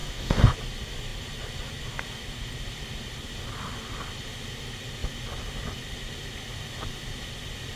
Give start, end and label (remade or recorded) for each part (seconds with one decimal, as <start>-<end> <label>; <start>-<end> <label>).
0.0-0.6 remade; 0.6-7.8 recorded